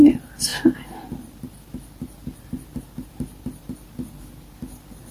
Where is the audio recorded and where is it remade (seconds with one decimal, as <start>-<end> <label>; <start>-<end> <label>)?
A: 0.0-5.1 recorded